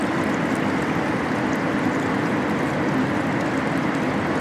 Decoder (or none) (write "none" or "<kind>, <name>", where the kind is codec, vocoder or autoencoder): none